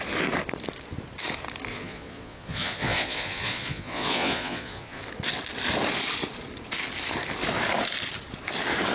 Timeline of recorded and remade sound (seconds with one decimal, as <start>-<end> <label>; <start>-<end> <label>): 0.0-1.7 recorded; 1.7-5.0 remade; 5.0-8.9 recorded